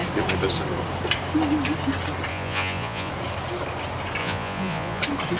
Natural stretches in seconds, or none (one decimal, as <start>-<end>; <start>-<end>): 0.0-2.3; 3.1-4.2; 5.0-5.4